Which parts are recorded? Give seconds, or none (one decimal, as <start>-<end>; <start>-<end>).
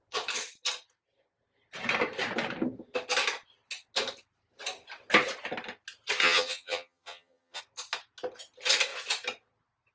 0.0-6.2; 7.6-9.9